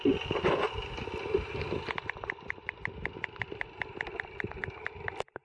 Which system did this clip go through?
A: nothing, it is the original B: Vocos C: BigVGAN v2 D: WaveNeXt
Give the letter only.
A